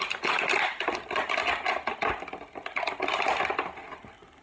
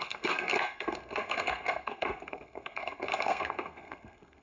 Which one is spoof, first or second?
second